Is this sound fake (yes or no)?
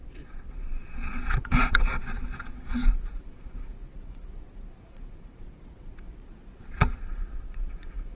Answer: yes